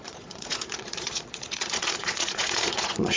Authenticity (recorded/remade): remade